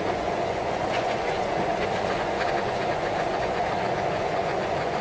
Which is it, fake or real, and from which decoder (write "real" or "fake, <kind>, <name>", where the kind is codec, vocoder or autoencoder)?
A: fake, vocoder, Vocos